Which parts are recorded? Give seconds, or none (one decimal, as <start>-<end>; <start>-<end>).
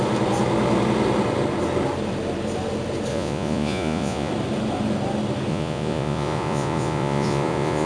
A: 0.0-3.1; 4.3-5.5